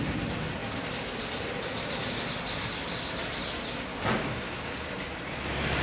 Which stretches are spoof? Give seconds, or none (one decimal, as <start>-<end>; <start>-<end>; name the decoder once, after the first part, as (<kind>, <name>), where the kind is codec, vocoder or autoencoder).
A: 3.9-5.0 (codec, DAC)